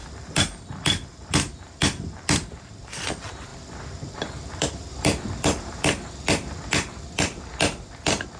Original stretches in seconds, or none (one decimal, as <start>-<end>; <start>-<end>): 3.1-3.5; 7.4-8.4